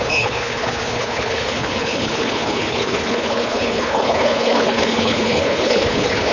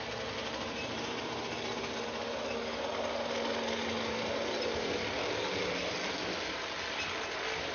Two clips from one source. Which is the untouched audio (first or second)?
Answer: second